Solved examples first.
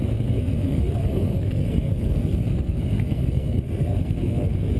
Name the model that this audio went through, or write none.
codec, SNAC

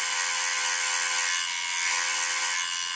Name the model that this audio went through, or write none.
none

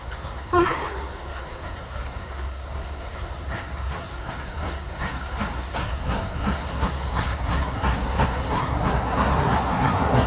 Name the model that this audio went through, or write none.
codec, SNAC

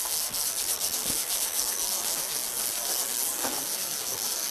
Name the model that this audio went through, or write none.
codec, SNAC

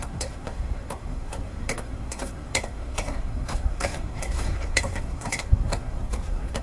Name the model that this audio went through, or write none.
codec, SNAC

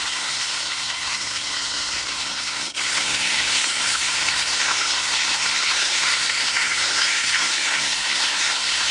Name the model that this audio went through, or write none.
codec, SNAC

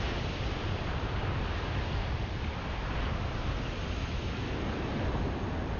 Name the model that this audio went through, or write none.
none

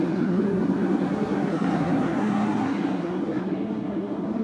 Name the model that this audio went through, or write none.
codec, SNAC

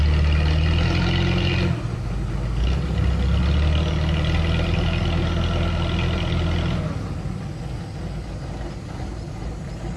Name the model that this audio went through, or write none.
none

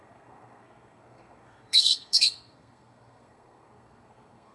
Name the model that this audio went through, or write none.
codec, SNAC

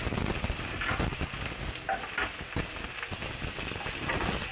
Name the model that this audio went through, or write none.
none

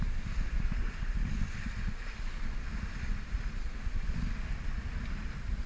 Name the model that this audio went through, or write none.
none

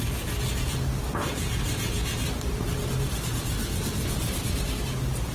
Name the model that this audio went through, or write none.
none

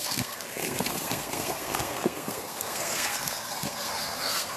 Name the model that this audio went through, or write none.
codec, SNAC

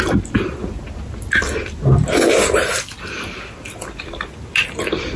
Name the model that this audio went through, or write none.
none